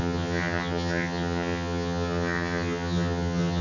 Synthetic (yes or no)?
yes